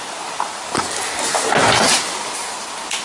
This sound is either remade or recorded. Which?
recorded